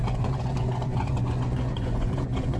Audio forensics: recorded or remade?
remade